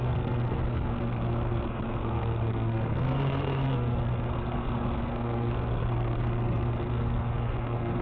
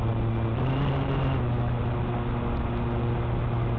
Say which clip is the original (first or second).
second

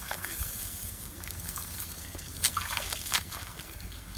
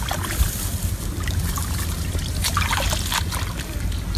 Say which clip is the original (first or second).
second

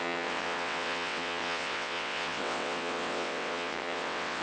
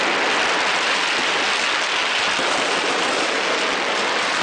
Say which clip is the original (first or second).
second